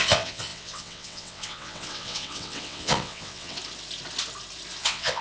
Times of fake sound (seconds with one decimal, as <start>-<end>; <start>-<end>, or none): 0.0-3.6; 4.8-5.2

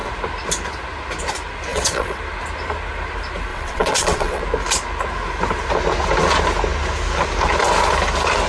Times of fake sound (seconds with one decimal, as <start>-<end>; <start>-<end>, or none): 1.7-2.2; 3.5-4.4

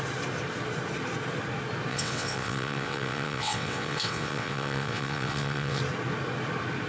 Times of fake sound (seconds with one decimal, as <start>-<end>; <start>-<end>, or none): 1.9-5.8

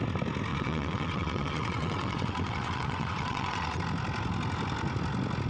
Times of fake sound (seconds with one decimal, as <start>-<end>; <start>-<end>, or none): 0.5-3.8

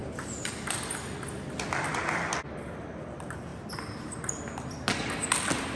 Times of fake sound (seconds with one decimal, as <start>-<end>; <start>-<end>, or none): none

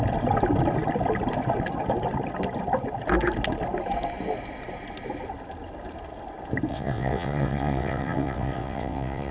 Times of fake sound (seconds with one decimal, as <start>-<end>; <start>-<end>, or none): 6.7-9.3

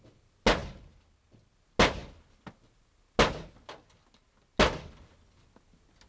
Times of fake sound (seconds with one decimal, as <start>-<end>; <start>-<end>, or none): none